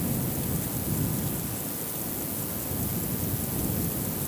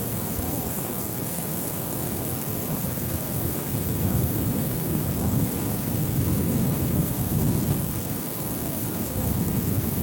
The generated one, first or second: second